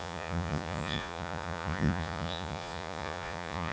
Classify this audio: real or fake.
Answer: fake